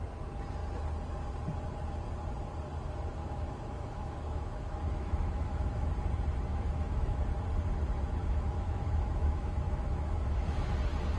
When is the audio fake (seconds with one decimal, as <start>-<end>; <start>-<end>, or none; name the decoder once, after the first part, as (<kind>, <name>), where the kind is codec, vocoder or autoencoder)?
3.2-5.9 (autoencoder, DAC-VAE); 6.5-7.2; 8.2-10.7